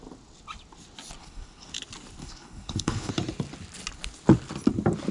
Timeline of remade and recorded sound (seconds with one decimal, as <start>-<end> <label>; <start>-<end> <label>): 0.0-1.2 recorded; 1.2-1.7 remade; 1.7-2.2 recorded; 2.2-3.1 remade; 3.1-5.1 recorded